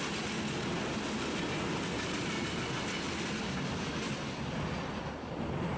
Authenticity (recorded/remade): recorded